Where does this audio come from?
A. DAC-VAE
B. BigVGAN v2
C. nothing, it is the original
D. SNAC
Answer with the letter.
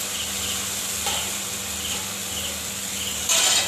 C